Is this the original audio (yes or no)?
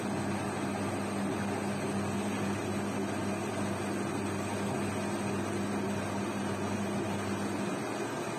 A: yes